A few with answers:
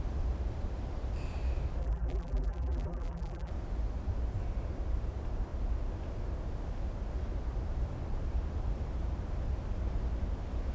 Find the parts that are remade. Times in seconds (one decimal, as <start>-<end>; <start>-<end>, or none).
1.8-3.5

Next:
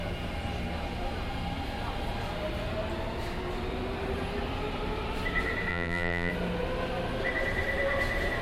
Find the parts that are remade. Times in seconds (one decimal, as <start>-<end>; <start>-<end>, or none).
5.7-6.3

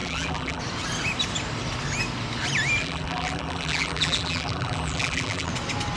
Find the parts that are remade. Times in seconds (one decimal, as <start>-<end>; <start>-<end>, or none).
0.0-0.6; 2.8-5.5

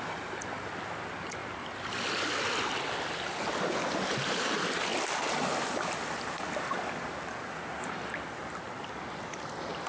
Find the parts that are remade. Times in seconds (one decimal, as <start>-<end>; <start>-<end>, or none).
none